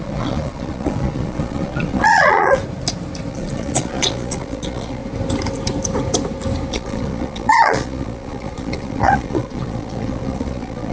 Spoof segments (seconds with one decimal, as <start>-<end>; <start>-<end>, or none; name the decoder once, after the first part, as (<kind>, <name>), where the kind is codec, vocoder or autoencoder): 0.0-2.6 (vocoder, Vocos); 3.3-5.0; 6.7-10.9